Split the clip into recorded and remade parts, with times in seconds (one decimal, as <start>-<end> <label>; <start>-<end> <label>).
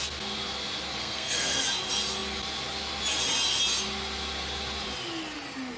0.0-1.0 recorded; 1.0-1.6 remade; 1.6-5.8 recorded